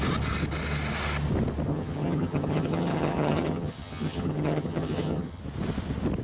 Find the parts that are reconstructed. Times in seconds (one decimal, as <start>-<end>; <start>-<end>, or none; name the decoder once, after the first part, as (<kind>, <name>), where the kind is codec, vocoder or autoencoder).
1.7-5.4 (vocoder, HiFi-GAN)